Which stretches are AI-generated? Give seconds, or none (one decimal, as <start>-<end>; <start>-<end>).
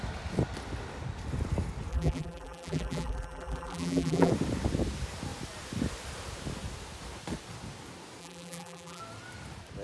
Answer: 1.9-4.3; 8.2-9.0